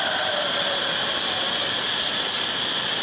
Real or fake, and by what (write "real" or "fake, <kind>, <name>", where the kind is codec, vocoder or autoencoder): real